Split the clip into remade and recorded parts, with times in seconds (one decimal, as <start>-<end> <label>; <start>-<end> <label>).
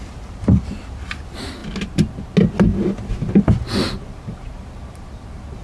0.0-1.6 remade; 1.6-5.0 recorded; 5.0-5.6 remade